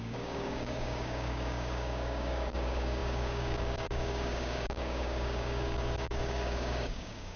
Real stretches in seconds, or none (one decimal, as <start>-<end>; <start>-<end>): none